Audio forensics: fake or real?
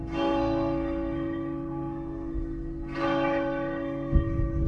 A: fake